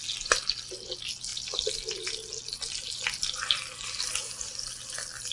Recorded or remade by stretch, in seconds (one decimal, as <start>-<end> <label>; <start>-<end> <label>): 0.0-5.3 recorded